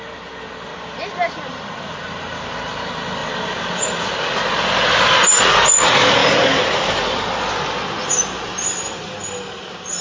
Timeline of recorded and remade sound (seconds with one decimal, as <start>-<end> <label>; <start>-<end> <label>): 0.0-0.7 recorded; 0.7-2.8 remade; 2.8-8.5 recorded; 8.5-9.1 remade; 9.1-10.0 recorded

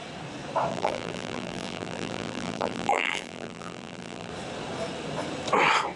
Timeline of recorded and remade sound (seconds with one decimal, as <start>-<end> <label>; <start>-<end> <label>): 0.0-0.7 recorded; 0.7-4.3 remade; 4.3-6.0 recorded

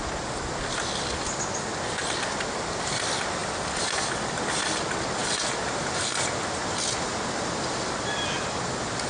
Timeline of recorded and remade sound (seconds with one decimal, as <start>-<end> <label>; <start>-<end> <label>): 0.0-3.4 recorded; 3.4-4.7 remade; 4.7-9.1 recorded

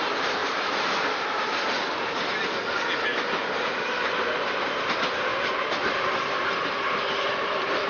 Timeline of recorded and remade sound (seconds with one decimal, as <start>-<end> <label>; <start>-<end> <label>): 0.0-0.4 recorded; 0.4-1.6 remade; 1.6-5.3 recorded; 5.3-7.9 remade

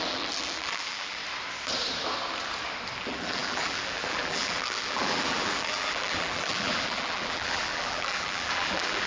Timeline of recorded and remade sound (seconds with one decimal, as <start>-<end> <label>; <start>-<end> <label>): 0.0-1.2 remade; 1.2-3.0 recorded; 3.0-9.1 remade

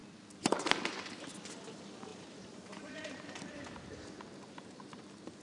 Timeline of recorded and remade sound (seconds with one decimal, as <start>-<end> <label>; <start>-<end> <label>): 0.0-2.1 recorded; 2.1-5.4 remade

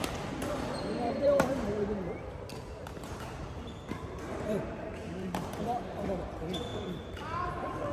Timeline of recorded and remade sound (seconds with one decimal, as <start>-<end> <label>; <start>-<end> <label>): 0.0-6.7 remade; 6.7-7.5 recorded; 7.5-7.9 remade

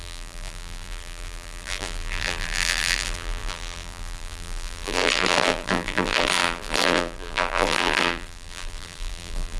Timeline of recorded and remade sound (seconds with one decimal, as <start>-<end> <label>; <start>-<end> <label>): 0.0-9.6 remade